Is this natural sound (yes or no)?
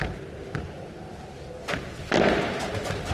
yes